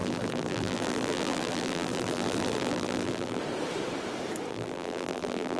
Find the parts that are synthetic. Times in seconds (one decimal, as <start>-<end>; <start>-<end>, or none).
0.0-3.4; 4.5-5.6